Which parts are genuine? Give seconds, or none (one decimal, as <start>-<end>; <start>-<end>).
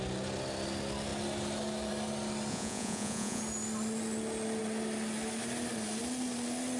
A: 0.0-2.5; 3.4-6.8